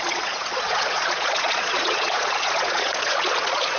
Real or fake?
fake